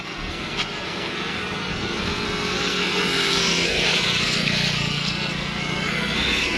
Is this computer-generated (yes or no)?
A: yes